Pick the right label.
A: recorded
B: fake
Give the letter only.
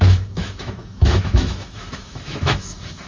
B